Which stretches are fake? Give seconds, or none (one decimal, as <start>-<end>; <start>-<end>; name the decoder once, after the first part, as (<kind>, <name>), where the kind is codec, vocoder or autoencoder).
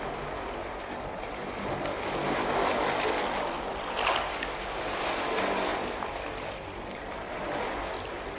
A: 5.7-7.6 (vocoder, BigVGAN v2)